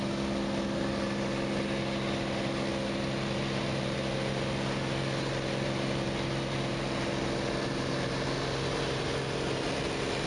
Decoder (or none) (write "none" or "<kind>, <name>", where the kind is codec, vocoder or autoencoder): none